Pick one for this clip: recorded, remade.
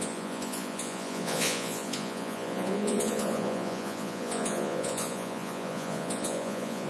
remade